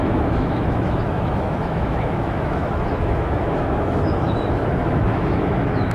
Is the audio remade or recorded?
remade